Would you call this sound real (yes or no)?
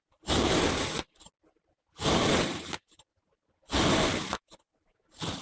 yes